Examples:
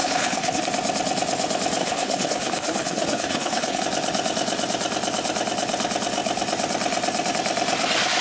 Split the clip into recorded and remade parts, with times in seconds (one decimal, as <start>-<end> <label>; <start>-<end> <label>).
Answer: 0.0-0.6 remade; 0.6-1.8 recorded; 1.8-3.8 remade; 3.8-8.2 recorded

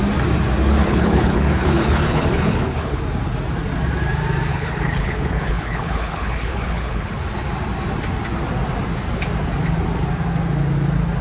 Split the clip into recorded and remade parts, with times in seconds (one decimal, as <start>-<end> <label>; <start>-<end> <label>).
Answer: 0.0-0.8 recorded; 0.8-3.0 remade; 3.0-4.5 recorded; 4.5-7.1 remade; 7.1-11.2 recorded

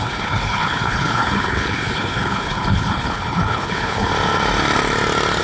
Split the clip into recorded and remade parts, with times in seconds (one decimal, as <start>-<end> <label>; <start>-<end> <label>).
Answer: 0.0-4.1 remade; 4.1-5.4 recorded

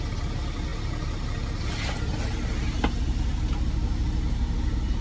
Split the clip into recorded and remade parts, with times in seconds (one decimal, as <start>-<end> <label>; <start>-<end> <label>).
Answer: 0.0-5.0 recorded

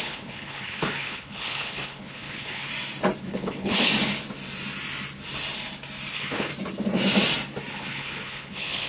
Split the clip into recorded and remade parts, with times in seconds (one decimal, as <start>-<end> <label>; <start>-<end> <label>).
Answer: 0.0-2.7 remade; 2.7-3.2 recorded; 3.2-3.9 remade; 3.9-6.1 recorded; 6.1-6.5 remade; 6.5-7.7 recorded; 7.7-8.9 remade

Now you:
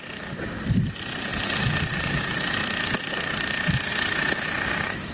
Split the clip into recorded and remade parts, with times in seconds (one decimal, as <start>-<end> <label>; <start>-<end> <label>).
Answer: 0.0-5.1 recorded

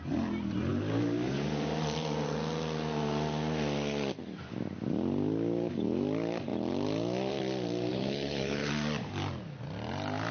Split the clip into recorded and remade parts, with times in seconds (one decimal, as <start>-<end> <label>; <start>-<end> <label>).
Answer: 0.0-7.9 recorded; 7.9-8.7 remade; 8.7-10.3 recorded